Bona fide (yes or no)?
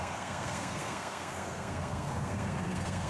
no